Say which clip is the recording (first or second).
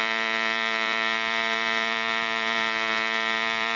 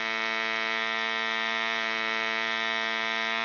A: second